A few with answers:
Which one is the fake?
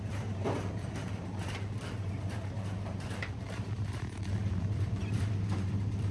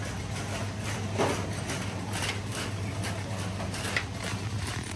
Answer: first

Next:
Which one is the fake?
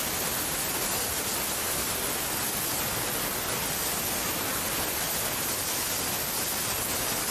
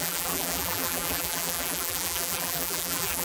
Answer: second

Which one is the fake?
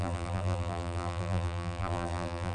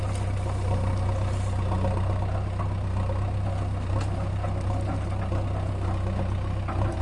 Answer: first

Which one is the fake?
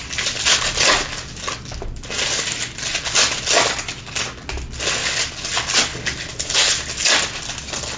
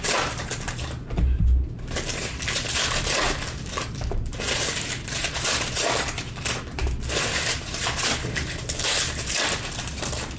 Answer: second